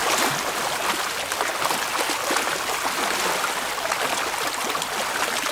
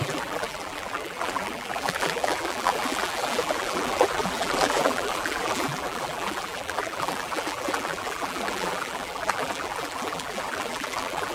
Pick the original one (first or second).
first